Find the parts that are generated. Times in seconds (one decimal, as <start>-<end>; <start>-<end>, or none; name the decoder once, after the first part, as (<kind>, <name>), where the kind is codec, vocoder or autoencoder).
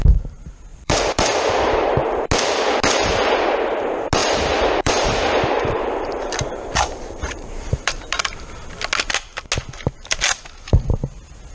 0.7-1.9 (vocoder, BigVGAN v2); 4.2-8.2